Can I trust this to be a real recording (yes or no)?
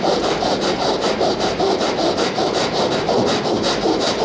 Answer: yes